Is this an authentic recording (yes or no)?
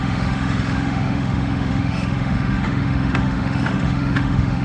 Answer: no